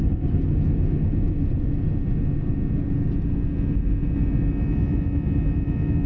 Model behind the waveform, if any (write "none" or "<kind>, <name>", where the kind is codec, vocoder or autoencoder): none